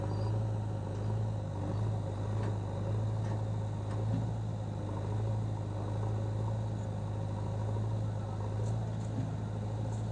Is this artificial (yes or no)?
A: no